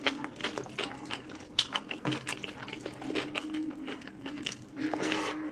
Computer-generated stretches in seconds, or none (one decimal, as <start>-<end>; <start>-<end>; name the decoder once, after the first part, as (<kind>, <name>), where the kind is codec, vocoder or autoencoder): 0.0-0.4 (codec, SNAC); 0.9-2.3; 3.3-5.5

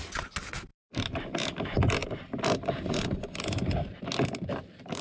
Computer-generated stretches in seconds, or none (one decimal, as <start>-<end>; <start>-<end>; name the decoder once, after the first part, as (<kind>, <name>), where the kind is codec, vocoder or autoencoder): 0.7-1.2 (vocoder, BigVGAN v2)